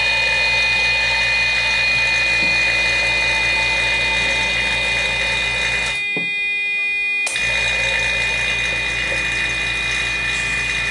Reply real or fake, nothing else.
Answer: real